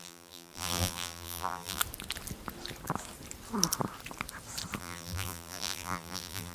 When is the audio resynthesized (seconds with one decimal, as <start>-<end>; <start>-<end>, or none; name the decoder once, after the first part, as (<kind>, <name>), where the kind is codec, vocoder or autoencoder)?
0.0-1.8 (vocoder, BigVGAN v2); 4.8-6.5